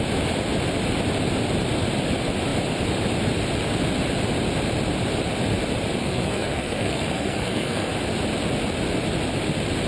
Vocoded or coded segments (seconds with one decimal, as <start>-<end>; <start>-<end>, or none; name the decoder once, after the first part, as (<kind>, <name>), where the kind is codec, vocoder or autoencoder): 6.0-7.9 (codec, SNAC)